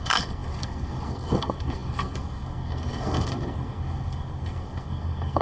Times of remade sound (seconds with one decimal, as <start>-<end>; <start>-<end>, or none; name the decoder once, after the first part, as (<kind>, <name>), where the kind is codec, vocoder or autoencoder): 0.0-5.4 (codec, SNAC)